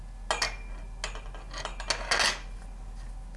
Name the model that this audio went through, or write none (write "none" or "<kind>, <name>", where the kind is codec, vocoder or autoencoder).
none